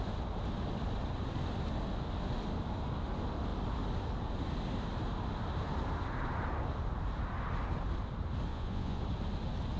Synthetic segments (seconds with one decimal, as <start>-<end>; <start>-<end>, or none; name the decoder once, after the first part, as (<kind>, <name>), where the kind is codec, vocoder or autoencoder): 8.5-9.0 (vocoder, Vocos)